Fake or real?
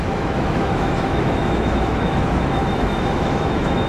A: fake